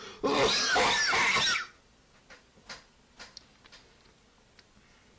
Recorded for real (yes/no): yes